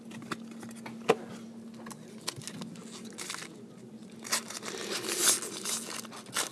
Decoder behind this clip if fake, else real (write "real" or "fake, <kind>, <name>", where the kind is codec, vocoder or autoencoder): real